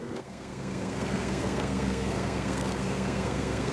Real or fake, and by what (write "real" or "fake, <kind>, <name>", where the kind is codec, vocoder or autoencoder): fake, codec, SNAC